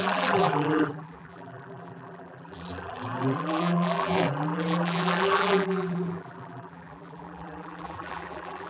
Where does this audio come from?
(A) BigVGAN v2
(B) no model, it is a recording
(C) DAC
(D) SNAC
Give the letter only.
A